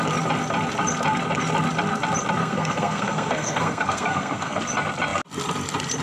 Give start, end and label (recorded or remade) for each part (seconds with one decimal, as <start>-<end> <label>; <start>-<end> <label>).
0.0-2.4 recorded; 2.4-4.6 remade; 4.6-6.0 recorded